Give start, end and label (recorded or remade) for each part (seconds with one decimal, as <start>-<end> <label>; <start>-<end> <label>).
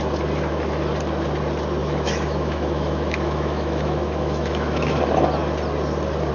0.0-1.8 recorded; 1.8-5.0 remade; 5.0-6.3 recorded